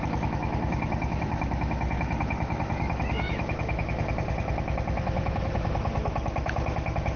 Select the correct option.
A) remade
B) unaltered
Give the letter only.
A